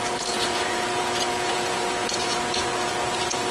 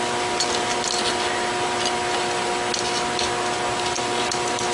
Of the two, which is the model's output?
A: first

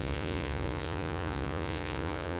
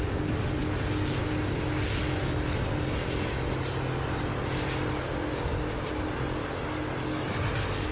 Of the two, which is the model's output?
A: first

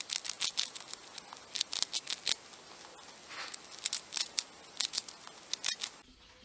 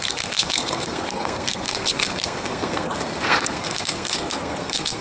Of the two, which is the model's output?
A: second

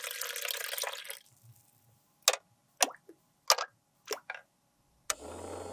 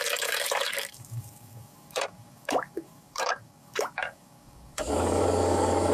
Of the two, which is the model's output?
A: second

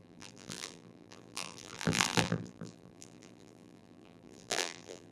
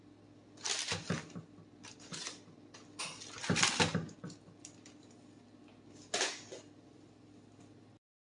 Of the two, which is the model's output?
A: first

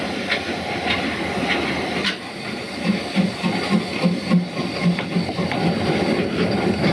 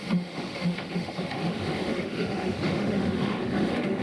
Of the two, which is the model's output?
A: second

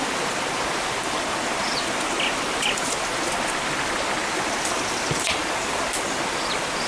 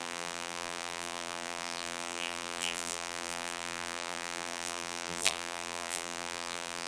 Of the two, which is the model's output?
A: second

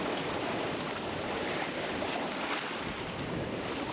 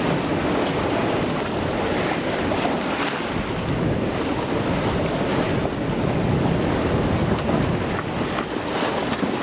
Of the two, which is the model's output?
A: first